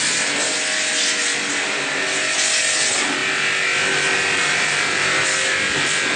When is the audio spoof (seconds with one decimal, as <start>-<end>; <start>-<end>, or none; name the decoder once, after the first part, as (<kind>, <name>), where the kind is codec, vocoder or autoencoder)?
none